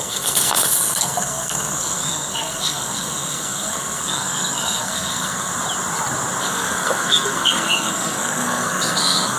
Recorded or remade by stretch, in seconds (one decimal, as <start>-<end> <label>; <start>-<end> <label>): 0.0-5.5 remade; 5.5-6.4 recorded; 6.4-9.4 remade